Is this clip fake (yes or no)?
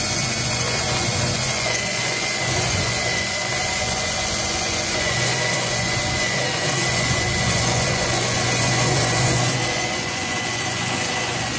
yes